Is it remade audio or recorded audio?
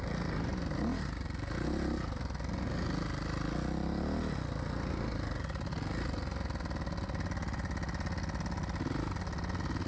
recorded